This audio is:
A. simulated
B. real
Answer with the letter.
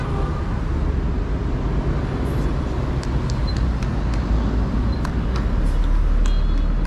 B